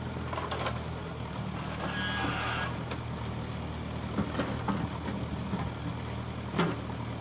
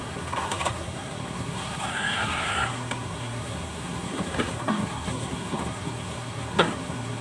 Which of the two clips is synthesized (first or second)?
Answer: second